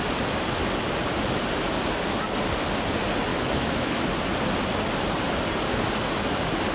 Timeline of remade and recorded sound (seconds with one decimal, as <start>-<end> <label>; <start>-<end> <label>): 0.0-3.3 recorded; 3.3-4.1 remade; 4.1-6.7 recorded